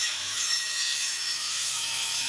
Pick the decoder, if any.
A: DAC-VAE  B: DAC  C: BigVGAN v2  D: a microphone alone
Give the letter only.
A